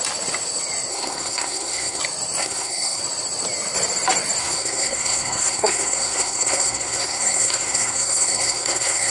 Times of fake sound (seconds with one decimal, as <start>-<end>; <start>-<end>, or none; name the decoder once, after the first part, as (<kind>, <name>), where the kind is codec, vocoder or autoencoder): 0.9-2.0 (codec, SNAC); 2.4-3.0; 4.4-9.1